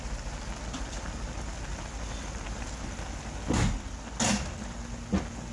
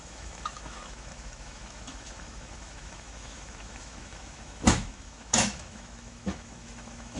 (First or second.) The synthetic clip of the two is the second